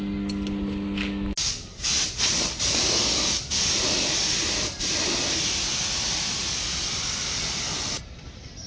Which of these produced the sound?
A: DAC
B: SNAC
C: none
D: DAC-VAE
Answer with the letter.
C